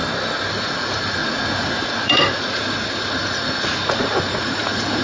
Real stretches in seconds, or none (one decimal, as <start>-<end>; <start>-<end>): 0.0-0.5